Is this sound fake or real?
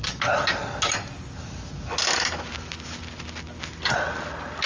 real